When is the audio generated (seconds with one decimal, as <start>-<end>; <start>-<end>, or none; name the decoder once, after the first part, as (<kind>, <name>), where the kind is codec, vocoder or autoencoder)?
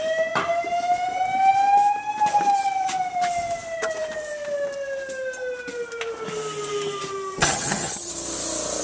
7.4-8.1 (vocoder, HiFi-GAN)